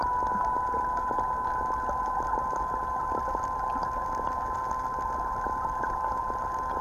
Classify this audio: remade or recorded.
recorded